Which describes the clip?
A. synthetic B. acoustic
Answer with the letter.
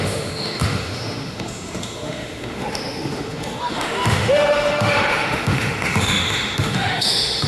A